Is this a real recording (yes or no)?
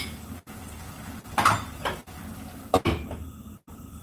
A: yes